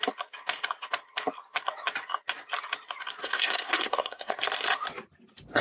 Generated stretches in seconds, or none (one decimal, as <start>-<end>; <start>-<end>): 3.2-4.3